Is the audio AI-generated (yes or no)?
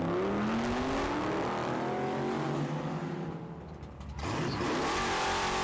no